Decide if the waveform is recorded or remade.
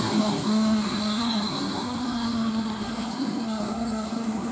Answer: remade